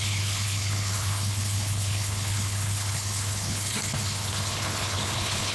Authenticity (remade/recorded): remade